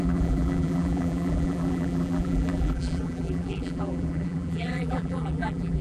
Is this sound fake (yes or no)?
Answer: yes